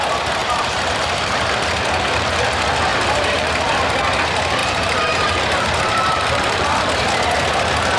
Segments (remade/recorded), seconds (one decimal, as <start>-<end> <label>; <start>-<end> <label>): 0.0-0.4 recorded; 0.4-1.5 remade; 1.5-2.9 recorded; 2.9-3.8 remade; 3.8-4.6 recorded; 4.6-6.9 remade; 6.9-8.0 recorded